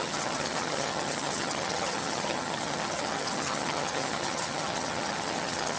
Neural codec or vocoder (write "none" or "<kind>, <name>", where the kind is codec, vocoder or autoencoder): vocoder, HiFi-GAN